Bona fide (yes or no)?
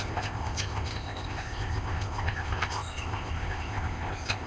no